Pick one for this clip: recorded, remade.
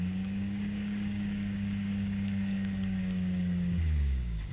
remade